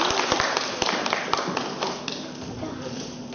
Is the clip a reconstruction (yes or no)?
yes